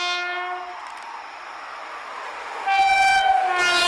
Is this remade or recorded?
recorded